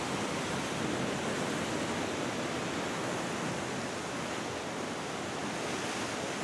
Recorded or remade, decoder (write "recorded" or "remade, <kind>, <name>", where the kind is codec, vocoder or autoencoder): recorded